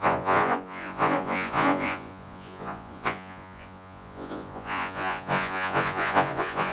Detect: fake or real fake